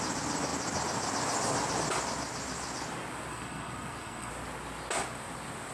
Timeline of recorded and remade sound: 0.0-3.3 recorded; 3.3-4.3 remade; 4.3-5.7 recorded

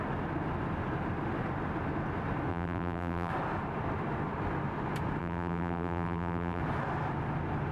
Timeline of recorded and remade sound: 0.0-2.5 recorded; 2.5-3.3 remade; 3.3-5.2 recorded; 5.2-6.6 remade; 6.6-7.7 recorded

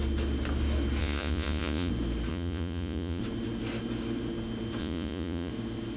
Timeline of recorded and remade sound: 0.0-1.0 recorded; 1.0-1.9 remade; 1.9-2.3 recorded; 2.3-3.2 remade; 3.2-4.8 recorded; 4.8-5.5 remade; 5.5-6.0 recorded

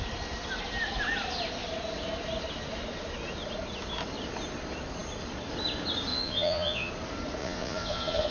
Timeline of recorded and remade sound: 0.0-6.1 recorded; 6.1-6.9 remade; 6.9-7.4 recorded; 7.4-8.3 remade